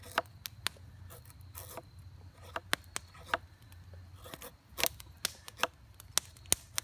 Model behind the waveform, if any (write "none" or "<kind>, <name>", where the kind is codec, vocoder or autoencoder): none